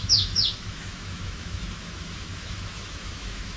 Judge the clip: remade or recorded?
remade